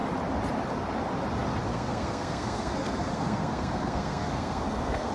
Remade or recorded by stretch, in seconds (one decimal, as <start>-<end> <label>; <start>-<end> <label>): 0.0-1.7 recorded; 1.7-5.1 remade